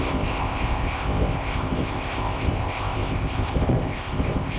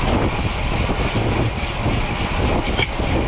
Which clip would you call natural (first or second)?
second